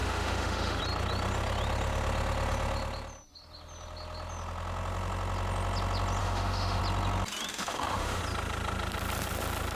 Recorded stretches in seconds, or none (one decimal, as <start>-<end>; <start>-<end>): 0.8-6.2; 6.8-7.5; 8.2-9.8